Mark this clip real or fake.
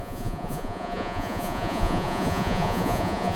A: fake